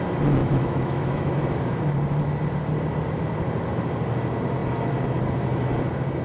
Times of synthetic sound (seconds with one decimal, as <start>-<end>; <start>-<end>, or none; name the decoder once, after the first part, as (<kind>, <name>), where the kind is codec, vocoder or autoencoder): 0.4-1.3 (autoencoder, DAC-VAE)